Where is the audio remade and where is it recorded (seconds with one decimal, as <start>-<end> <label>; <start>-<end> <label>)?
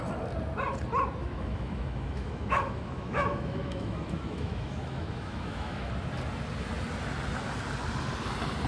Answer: 0.0-1.2 recorded; 1.2-5.9 remade; 5.9-8.7 recorded